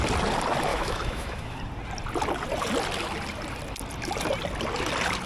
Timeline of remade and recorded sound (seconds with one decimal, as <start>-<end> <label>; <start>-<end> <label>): 0.0-0.7 recorded; 0.7-1.6 remade; 1.6-5.3 recorded